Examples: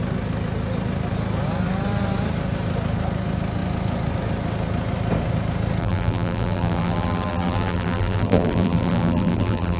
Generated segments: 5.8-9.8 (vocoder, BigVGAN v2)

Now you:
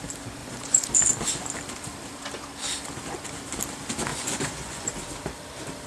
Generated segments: 0.4-0.9 (vocoder, Vocos); 4.1-4.9

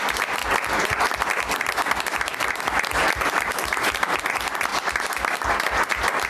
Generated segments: none

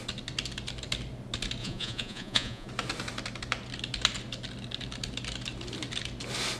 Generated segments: 1.6-2.7 (vocoder, Vocos)